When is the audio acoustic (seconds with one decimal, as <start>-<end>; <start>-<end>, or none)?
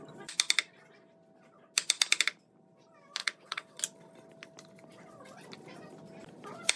0.0-3.2; 3.8-6.8